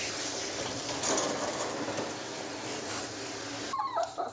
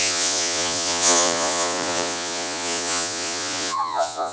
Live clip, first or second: first